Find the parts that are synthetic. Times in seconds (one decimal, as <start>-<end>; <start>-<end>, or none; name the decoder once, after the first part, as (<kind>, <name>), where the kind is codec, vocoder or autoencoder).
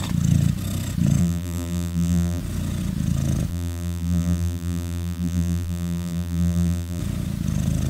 1.2-2.4 (vocoder, BigVGAN v2); 3.5-7.0